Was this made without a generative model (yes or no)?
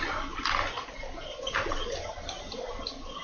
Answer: yes